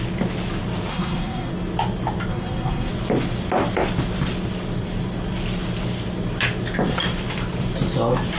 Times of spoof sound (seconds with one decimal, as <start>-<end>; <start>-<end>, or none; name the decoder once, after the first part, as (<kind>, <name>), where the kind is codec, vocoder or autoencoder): 0.9-1.5 (codec, SNAC); 2.3-2.9